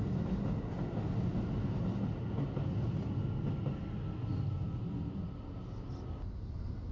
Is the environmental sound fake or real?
real